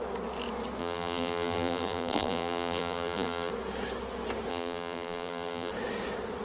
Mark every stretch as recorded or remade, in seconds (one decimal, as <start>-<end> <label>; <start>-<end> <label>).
0.0-0.8 recorded; 0.8-3.5 remade; 3.5-4.5 recorded; 4.5-5.7 remade; 5.7-6.4 recorded